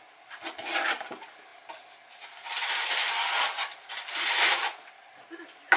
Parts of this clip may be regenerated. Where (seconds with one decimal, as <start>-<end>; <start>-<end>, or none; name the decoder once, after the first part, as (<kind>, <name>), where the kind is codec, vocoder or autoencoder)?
none

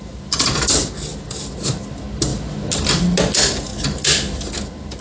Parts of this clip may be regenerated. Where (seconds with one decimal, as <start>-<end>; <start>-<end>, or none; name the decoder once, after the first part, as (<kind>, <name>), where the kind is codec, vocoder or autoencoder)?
none

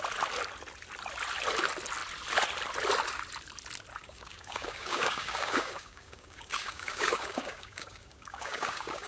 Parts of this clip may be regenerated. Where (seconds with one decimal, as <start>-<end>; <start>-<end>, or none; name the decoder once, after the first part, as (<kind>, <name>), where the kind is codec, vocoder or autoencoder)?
4.0-9.1 (codec, DAC)

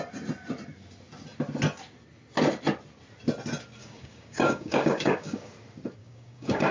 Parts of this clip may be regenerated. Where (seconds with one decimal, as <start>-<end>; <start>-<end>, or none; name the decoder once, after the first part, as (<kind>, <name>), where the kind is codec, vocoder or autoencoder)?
3.8-5.5 (codec, DAC); 6.0-6.7

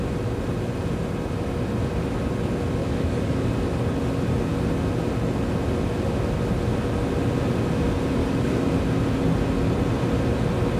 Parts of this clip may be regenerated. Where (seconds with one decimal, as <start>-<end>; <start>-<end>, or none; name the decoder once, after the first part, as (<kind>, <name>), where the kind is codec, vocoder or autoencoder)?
2.8-3.5 (codec, DAC); 8.2-8.7